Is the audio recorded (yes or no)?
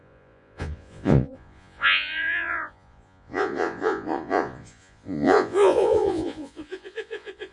no